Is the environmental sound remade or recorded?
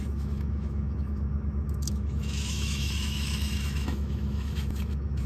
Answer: remade